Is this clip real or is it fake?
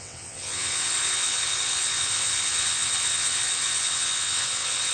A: fake